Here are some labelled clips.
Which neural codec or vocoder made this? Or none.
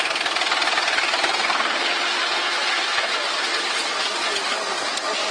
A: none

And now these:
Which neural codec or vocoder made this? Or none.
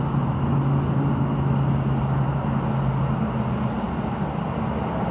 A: none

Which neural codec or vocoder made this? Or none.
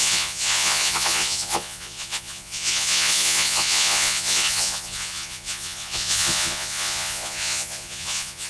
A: vocoder, Vocos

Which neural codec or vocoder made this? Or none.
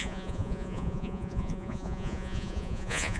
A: vocoder, Vocos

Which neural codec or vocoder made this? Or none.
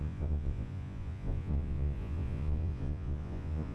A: vocoder, Vocos